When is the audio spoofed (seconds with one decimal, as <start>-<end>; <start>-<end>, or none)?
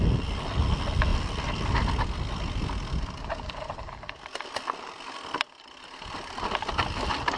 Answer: none